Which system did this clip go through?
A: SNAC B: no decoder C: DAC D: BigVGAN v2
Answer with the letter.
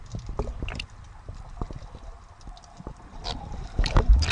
B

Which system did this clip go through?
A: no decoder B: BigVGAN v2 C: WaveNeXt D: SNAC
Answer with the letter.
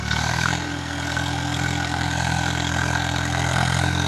D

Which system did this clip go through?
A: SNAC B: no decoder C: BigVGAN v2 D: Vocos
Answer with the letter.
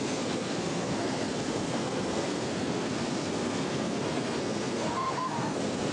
A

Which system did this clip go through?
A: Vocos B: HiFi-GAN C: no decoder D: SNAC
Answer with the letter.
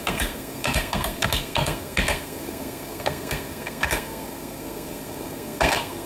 D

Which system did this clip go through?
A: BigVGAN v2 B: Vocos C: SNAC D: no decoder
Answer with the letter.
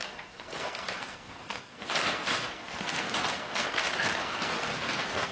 C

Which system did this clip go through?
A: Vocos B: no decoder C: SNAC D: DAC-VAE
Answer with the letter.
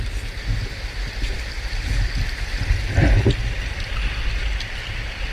B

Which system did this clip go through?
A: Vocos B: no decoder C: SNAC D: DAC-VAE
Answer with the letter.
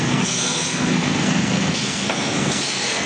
C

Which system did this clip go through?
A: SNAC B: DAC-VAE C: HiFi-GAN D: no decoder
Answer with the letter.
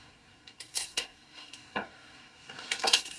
A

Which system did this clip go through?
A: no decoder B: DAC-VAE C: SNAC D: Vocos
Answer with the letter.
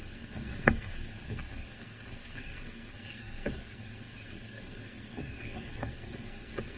C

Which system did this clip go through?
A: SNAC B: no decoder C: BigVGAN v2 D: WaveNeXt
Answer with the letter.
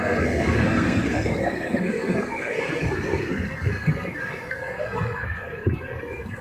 A